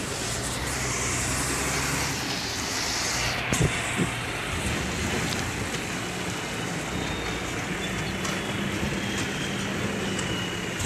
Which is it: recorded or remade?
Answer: recorded